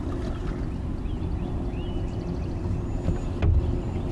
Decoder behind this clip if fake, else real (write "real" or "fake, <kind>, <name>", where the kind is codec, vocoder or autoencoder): real